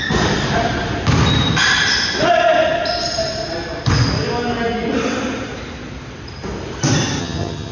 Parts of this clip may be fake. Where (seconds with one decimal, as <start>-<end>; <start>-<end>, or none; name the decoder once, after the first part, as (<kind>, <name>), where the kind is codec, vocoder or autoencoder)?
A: 7.2-7.7 (vocoder, HiFi-GAN)